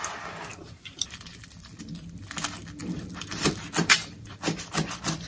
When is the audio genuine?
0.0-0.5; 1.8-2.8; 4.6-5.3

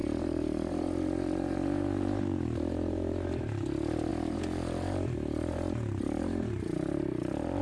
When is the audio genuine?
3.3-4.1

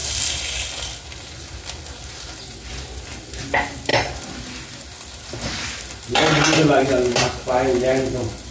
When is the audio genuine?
0.0-8.5

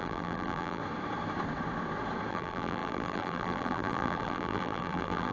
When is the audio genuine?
0.8-2.3

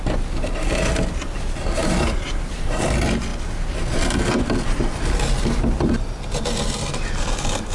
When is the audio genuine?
0.0-1.8; 2.7-7.7

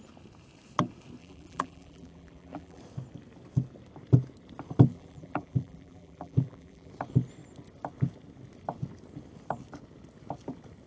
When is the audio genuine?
0.0-1.2; 2.8-4.9; 6.9-10.9

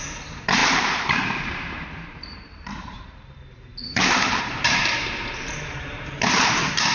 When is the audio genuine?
none

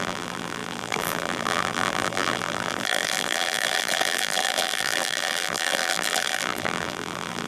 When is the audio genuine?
none